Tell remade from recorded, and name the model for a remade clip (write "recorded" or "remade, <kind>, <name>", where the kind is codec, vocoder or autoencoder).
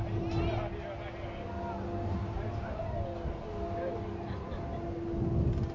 recorded